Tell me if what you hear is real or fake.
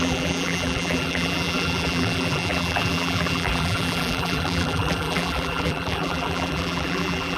fake